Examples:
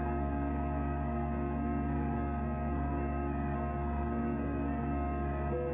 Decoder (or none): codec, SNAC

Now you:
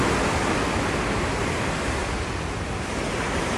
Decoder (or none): none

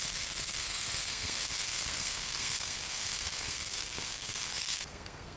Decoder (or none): codec, SNAC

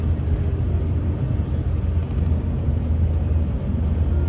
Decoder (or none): none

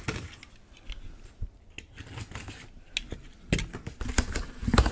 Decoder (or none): none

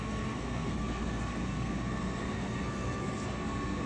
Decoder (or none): codec, SNAC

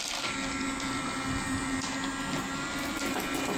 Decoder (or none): none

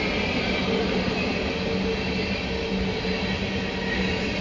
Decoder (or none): none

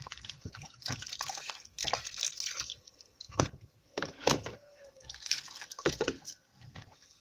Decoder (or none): codec, SNAC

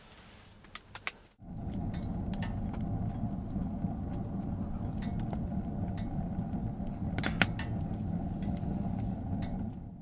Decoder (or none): none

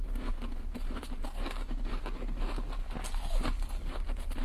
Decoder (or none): none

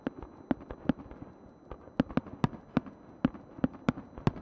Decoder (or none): none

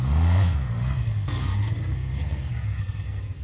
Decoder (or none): codec, SNAC